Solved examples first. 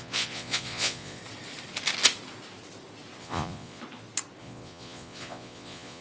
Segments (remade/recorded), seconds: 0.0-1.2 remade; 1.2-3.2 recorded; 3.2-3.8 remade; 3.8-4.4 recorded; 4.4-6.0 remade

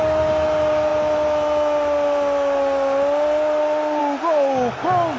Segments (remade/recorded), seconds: 0.0-5.2 recorded

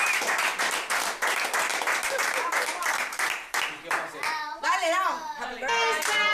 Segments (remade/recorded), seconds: 0.0-1.7 recorded; 1.7-5.5 remade; 5.5-6.3 recorded

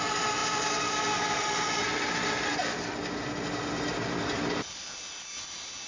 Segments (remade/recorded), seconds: 0.0-5.9 recorded

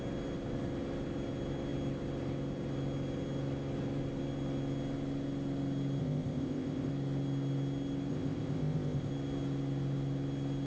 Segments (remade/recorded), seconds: 0.0-6.0 recorded; 6.0-6.9 remade; 6.9-8.1 recorded; 8.1-9.1 remade; 9.1-10.7 recorded

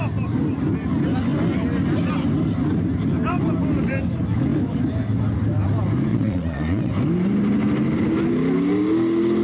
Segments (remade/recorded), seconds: 0.0-6.1 recorded; 6.1-6.9 remade; 6.9-9.4 recorded

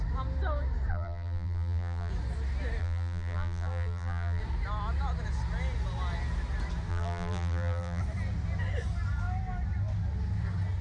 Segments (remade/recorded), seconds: 0.0-0.9 recorded; 0.9-2.1 remade; 2.1-2.8 recorded; 2.8-4.4 remade; 4.4-6.9 recorded; 6.9-8.0 remade; 8.0-10.8 recorded